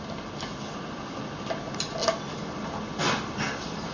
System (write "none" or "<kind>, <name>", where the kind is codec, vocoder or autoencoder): none